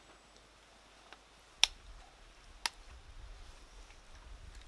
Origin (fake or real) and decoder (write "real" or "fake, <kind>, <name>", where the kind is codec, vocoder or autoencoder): real